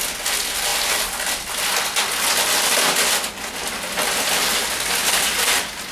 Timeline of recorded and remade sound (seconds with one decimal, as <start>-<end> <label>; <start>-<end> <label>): 0.0-5.9 recorded

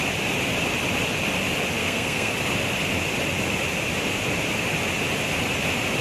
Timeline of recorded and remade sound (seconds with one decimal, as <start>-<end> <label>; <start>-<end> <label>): 0.0-1.8 recorded; 1.8-2.3 remade; 2.3-6.0 recorded

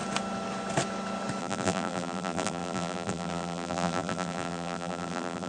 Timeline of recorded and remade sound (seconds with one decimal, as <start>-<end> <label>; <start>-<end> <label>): 0.0-1.4 recorded; 1.4-5.5 remade

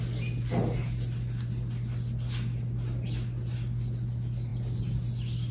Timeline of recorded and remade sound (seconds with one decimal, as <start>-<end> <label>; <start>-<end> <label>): 0.0-5.5 recorded